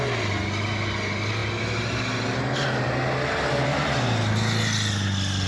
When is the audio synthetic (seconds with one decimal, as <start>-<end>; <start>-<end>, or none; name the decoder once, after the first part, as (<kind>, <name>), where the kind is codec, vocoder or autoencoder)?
none